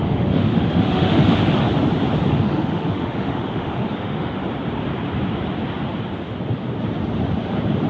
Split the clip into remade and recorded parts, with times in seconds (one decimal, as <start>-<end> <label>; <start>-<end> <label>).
0.0-1.6 remade; 1.6-2.3 recorded; 2.3-4.4 remade; 4.4-7.9 recorded